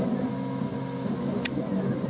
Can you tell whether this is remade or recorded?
recorded